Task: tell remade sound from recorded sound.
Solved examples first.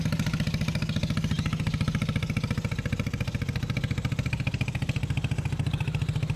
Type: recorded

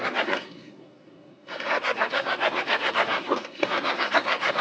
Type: remade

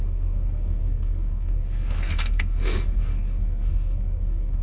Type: remade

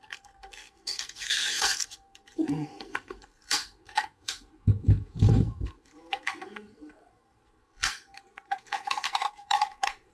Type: remade